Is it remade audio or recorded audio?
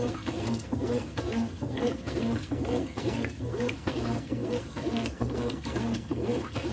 remade